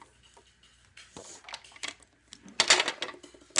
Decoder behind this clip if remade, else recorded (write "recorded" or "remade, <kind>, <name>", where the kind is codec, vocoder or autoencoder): recorded